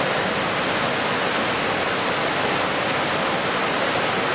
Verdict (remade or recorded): recorded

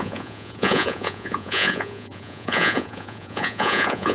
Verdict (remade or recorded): remade